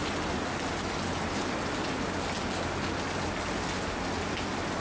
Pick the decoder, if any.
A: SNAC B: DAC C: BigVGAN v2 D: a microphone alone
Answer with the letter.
D